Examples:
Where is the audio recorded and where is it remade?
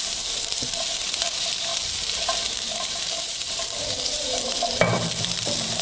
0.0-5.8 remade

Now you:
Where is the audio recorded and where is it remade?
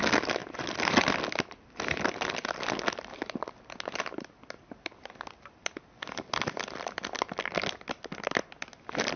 0.0-9.2 recorded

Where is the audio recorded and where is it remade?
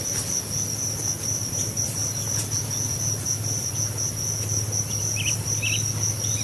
0.0-6.4 recorded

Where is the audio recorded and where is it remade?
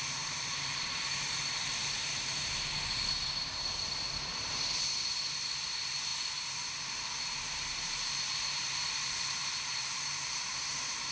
0.0-11.1 remade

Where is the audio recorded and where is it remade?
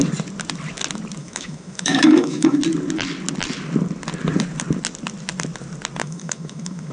0.0-1.2 recorded; 1.2-2.6 remade; 2.6-6.0 recorded; 6.0-6.9 remade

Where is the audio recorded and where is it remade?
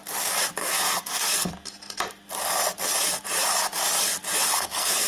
0.0-0.6 recorded; 0.6-1.5 remade; 1.5-4.5 recorded; 4.5-5.1 remade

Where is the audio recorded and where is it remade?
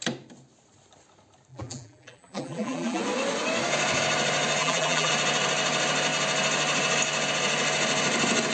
0.0-1.5 recorded; 1.5-3.0 remade; 3.0-4.6 recorded; 4.6-5.1 remade; 5.1-8.5 recorded